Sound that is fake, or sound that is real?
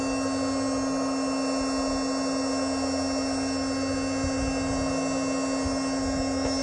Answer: real